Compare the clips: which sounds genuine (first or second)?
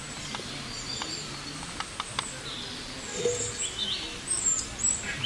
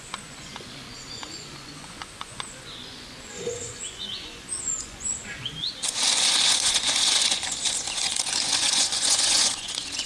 first